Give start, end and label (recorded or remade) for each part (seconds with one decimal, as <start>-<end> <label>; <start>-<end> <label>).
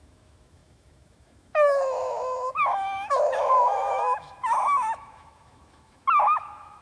0.0-6.8 remade